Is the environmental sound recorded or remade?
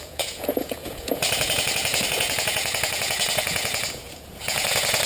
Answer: remade